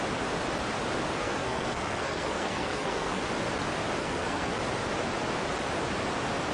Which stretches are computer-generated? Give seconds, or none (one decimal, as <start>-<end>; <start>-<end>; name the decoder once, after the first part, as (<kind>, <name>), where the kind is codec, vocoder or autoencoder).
1.2-3.2 (codec, SNAC); 4.0-4.5